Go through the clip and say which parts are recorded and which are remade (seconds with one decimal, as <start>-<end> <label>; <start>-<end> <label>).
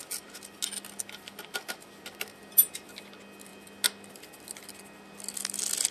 0.0-5.9 recorded